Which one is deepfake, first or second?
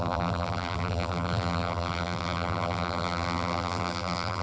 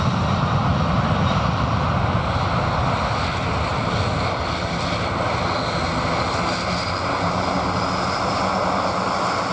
first